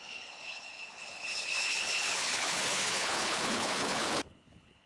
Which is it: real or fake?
fake